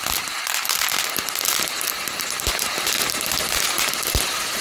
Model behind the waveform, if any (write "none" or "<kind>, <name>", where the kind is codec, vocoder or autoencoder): none